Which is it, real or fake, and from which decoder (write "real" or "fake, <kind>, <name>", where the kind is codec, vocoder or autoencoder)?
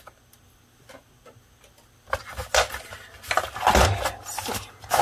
real